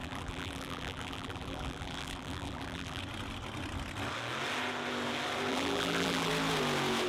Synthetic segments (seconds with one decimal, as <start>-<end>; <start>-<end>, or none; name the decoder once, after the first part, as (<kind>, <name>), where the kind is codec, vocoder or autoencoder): 0.0-3.0 (vocoder, BigVGAN v2); 5.5-6.3